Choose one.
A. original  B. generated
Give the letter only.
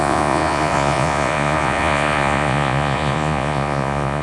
B